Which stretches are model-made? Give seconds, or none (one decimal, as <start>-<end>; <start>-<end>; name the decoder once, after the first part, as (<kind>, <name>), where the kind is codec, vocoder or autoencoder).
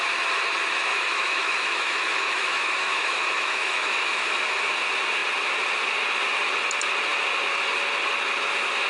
0.9-4.7 (autoencoder, DAC-VAE)